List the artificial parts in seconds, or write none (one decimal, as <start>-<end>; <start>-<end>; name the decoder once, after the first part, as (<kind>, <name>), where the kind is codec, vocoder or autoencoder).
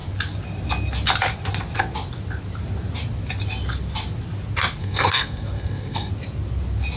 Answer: 4.8-6.1 (codec, SNAC)